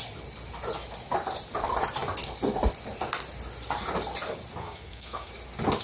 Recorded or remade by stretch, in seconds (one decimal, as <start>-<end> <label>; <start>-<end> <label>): 0.0-4.6 recorded; 4.6-5.3 remade; 5.3-5.8 recorded